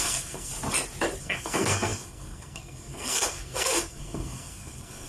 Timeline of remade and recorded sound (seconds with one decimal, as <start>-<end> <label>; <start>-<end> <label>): 0.0-0.5 remade; 0.5-1.2 recorded; 1.2-5.1 remade